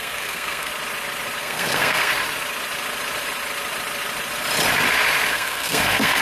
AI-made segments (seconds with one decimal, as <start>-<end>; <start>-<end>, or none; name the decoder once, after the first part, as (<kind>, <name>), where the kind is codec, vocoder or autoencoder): 0.0-0.7 (codec, SNAC); 1.4-2.1; 5.3-6.2